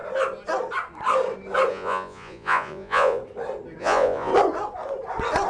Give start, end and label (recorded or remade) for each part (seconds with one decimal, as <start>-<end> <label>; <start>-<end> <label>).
0.0-1.7 recorded; 1.7-3.2 remade; 3.2-3.8 recorded; 3.8-4.3 remade; 4.3-5.5 recorded

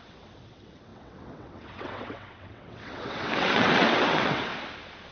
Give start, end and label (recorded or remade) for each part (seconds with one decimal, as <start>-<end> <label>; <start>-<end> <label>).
0.0-4.5 remade; 4.5-5.1 recorded